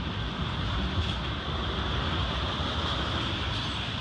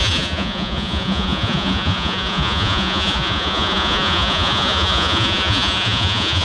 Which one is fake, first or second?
second